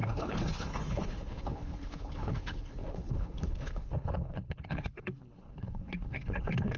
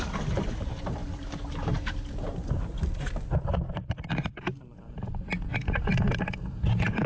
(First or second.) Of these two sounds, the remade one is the first